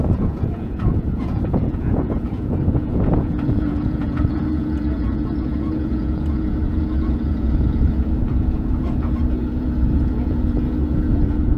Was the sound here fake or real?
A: fake